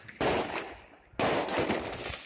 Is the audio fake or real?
real